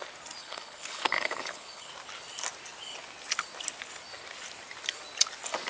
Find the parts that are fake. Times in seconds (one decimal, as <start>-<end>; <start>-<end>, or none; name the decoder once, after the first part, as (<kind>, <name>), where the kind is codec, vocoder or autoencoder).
0.4-1.9 (codec, HILCodec)